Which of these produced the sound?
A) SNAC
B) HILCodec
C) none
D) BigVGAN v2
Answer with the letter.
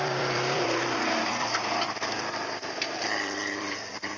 D